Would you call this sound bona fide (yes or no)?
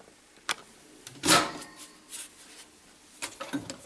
yes